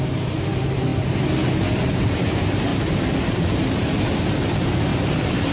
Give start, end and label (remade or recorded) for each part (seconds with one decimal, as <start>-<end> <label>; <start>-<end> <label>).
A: 0.0-0.9 remade; 0.9-1.9 recorded; 1.9-5.5 remade